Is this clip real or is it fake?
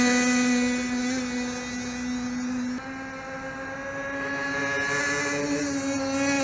real